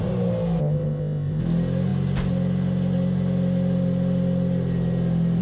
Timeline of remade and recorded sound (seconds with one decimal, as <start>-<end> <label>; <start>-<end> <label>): 0.0-0.6 recorded; 0.6-1.4 remade; 1.4-5.4 recorded